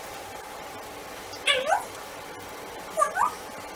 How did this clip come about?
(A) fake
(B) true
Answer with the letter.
B